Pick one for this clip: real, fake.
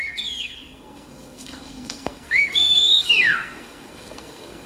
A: fake